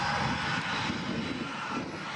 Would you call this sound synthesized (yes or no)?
no